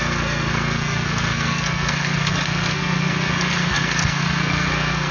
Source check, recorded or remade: remade